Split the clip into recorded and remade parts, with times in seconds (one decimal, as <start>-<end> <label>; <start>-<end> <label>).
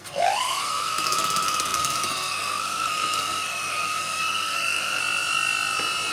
0.0-5.0 remade; 5.0-6.1 recorded